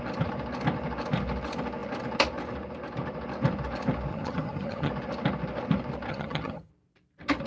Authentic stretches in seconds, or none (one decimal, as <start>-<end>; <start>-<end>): 0.0-4.1; 4.9-6.1; 6.7-7.5